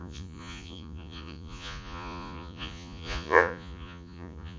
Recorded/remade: remade